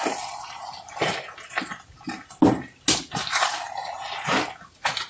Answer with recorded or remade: recorded